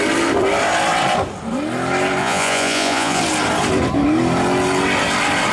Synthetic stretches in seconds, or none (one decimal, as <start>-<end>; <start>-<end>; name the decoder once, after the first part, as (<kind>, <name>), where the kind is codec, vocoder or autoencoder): 2.2-3.2 (vocoder, Vocos)